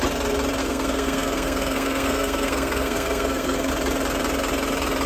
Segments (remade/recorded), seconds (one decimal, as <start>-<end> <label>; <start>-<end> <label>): 0.0-0.6 recorded; 0.6-3.7 remade; 3.7-5.1 recorded